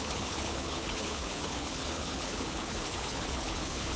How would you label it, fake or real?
fake